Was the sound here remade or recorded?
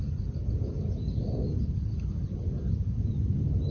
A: recorded